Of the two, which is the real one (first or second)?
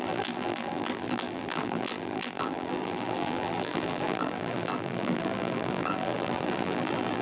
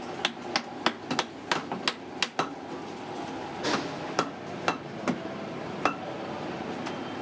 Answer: second